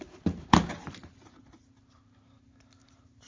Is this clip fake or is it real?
real